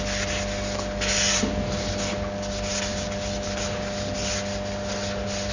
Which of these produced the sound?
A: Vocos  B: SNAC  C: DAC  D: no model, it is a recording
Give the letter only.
D